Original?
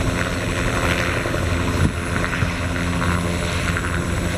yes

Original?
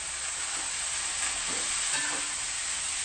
yes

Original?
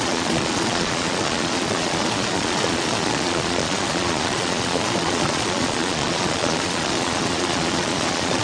no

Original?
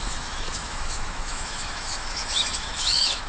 no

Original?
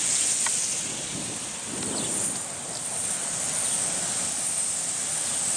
yes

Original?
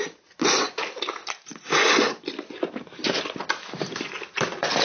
yes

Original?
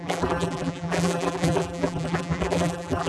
no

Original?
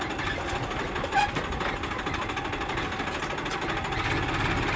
yes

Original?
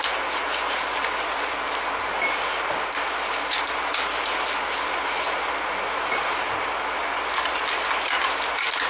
yes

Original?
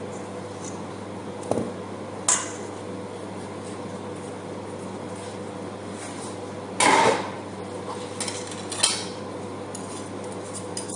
yes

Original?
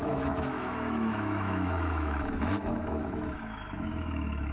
no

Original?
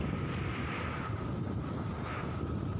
yes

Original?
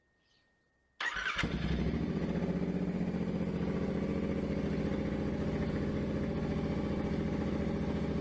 yes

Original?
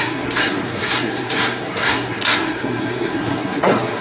no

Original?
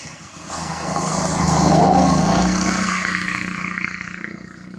no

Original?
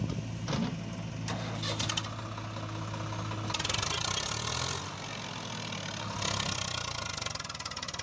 yes